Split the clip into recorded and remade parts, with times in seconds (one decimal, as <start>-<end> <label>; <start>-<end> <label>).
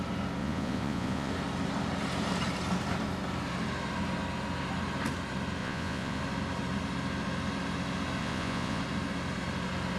0.0-0.4 recorded; 0.4-1.3 remade; 1.3-5.6 recorded; 5.6-6.2 remade; 6.2-8.2 recorded; 8.2-8.8 remade; 8.8-10.0 recorded